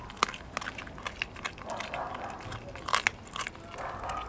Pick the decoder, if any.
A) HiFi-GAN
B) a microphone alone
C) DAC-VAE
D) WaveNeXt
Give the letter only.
B